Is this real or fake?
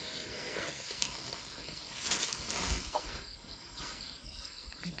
fake